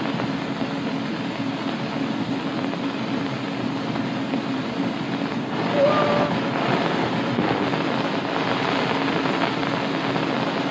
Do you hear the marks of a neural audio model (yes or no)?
no